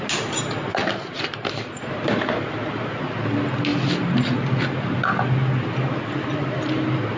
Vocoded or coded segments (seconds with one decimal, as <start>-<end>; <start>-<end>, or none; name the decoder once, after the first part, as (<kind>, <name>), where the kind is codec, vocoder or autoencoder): none